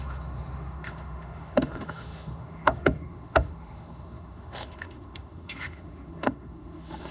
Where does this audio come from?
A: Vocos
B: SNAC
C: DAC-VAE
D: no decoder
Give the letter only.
C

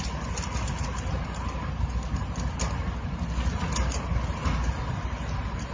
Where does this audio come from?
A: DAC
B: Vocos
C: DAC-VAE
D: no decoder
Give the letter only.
D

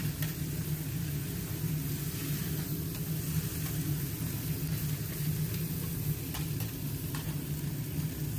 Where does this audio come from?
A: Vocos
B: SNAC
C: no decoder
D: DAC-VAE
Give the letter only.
C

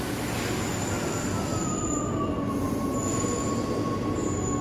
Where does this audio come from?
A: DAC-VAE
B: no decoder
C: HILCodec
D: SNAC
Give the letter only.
B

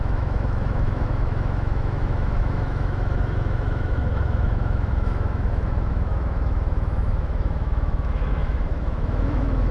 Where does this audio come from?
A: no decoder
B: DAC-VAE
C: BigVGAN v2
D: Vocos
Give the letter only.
B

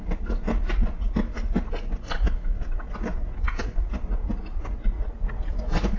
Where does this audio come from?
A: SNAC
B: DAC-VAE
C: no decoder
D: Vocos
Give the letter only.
C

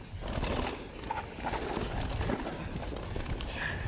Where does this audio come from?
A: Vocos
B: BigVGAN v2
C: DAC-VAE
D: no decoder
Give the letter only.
D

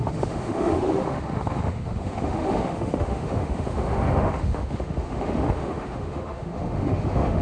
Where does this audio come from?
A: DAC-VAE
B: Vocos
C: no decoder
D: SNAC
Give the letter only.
A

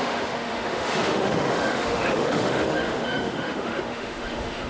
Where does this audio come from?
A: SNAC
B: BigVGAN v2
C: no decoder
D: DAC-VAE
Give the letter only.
D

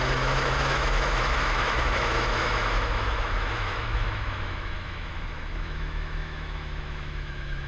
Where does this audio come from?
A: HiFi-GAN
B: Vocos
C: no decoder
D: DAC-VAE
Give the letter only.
D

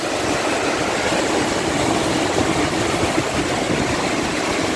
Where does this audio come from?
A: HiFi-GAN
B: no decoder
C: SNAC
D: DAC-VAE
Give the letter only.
B